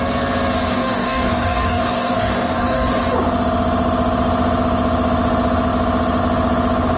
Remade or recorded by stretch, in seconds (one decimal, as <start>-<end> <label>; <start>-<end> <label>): 0.0-0.7 recorded; 0.7-3.0 remade; 3.0-7.0 recorded